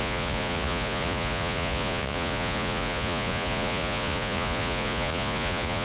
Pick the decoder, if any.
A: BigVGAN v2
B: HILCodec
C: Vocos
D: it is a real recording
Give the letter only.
C